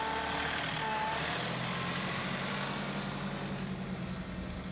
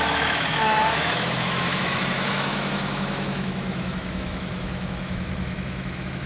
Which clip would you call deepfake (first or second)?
second